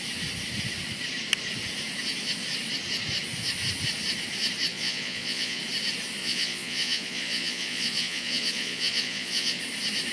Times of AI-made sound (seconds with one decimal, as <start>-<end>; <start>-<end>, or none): 4.7-5.6; 6.2-9.6